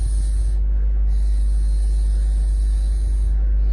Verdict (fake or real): real